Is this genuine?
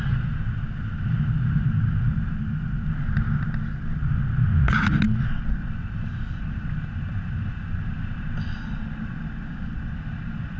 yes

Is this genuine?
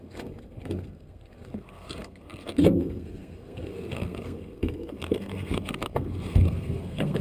no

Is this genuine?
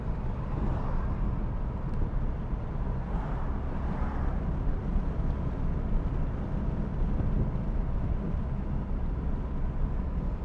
yes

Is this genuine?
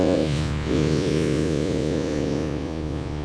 no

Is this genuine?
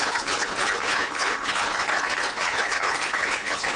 no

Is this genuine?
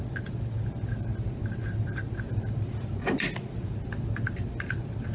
yes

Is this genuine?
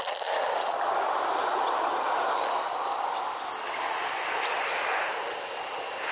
yes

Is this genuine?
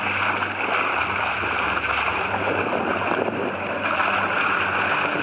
yes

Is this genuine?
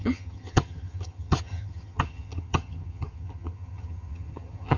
no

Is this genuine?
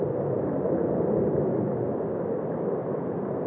yes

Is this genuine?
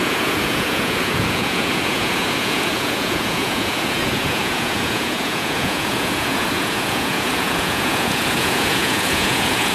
no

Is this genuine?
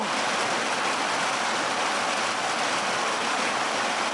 yes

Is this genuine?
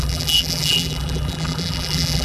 no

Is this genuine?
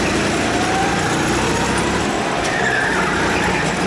yes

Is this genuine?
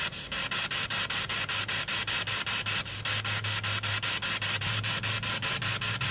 yes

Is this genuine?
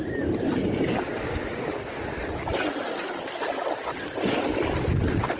yes